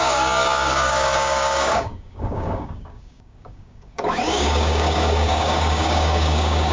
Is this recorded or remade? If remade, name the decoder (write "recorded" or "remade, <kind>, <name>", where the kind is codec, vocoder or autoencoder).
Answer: remade, codec, DAC